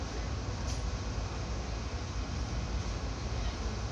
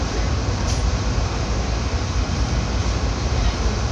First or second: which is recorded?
first